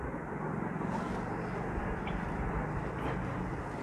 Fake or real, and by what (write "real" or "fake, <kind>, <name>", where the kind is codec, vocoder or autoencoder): real